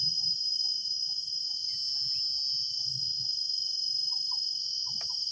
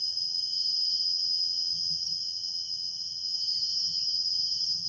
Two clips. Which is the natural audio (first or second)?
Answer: first